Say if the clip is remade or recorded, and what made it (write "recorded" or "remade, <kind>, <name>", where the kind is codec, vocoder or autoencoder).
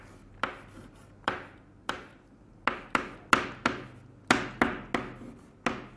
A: recorded